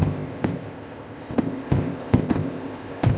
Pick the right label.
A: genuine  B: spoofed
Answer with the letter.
B